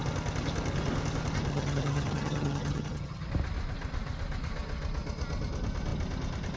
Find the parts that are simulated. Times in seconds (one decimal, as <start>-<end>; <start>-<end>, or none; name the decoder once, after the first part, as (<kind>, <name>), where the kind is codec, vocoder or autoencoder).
1.5-3.3 (vocoder, HiFi-GAN)